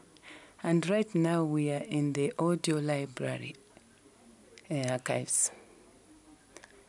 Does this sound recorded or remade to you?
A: recorded